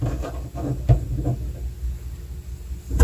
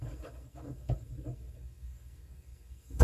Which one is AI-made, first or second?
second